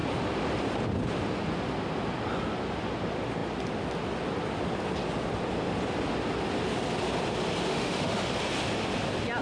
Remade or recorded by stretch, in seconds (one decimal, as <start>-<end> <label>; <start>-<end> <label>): 0.0-7.7 recorded; 7.7-8.3 remade; 8.3-9.4 recorded